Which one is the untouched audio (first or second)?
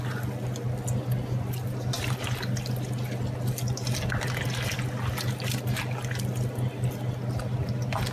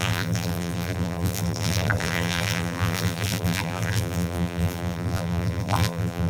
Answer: first